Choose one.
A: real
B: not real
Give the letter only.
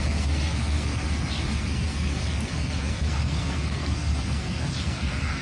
B